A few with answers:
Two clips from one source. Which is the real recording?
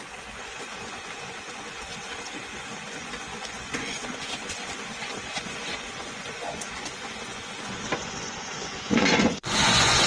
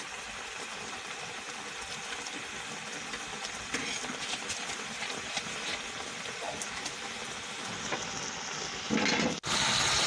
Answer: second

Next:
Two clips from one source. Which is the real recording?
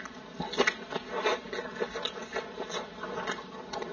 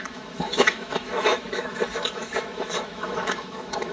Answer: first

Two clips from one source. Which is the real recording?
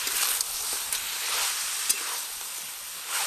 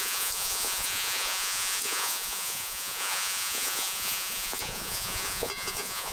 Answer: first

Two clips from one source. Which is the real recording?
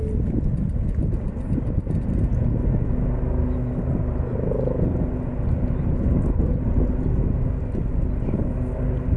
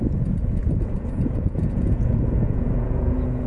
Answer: first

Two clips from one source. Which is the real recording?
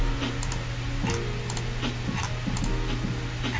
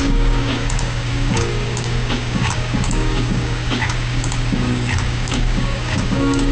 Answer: first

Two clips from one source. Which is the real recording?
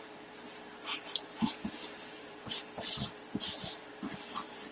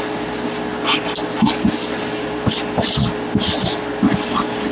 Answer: second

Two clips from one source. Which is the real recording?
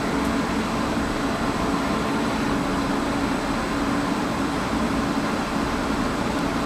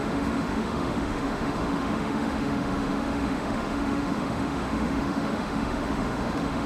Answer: first